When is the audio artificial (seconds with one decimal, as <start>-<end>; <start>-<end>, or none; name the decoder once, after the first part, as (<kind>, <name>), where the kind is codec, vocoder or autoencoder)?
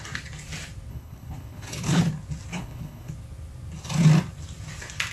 0.9-2.0 (codec, HILCodec); 2.5-3.1